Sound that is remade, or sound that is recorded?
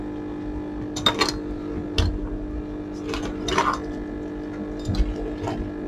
recorded